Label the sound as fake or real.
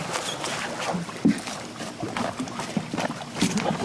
real